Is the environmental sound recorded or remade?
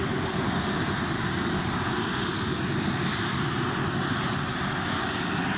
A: recorded